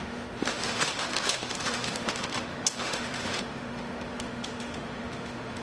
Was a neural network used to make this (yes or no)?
yes